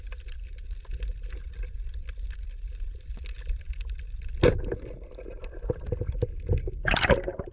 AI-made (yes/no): no